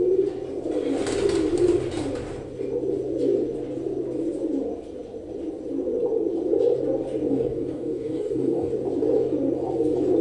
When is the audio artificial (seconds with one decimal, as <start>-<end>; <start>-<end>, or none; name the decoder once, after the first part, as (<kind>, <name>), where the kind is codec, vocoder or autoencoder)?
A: 7.3-8.7 (codec, DAC)